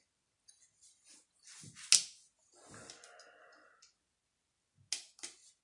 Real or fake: real